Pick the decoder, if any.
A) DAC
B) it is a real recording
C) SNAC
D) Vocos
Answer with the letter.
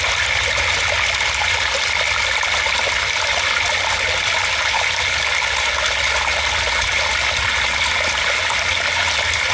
B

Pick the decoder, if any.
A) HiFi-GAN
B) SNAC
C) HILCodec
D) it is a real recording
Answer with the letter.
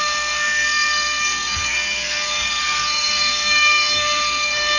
B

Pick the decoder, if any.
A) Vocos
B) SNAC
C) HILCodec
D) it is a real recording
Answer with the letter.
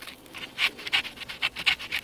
D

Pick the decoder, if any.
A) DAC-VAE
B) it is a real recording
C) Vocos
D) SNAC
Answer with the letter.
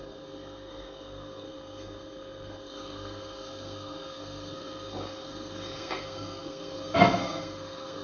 D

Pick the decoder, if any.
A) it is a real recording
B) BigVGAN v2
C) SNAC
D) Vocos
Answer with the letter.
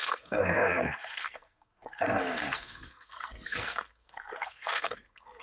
C